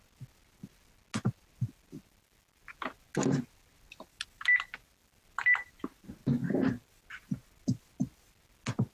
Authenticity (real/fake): real